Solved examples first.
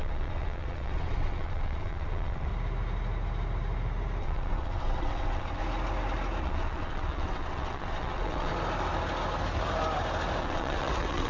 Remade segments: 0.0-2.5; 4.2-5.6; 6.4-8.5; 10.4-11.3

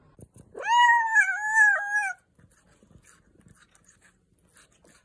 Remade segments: none

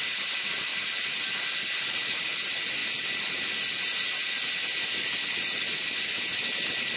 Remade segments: none

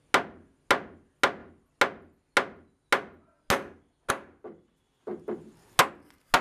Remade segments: none

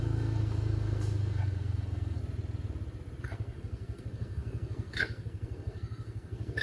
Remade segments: 0.0-2.2; 3.2-6.6

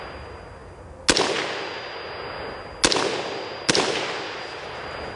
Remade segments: none

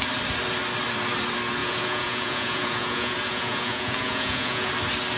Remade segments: 1.6-4.7